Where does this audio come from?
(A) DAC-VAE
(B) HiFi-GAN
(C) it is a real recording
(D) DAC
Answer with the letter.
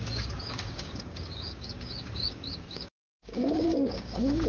D